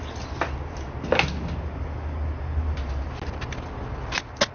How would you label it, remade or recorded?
recorded